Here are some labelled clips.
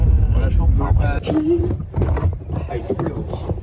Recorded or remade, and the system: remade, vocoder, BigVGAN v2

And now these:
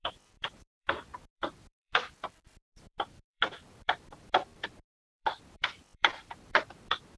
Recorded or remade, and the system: remade, vocoder, BigVGAN v2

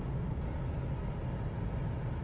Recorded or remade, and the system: recorded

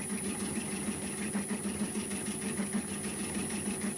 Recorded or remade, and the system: recorded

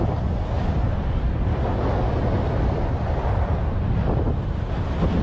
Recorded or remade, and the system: remade, vocoder, BigVGAN v2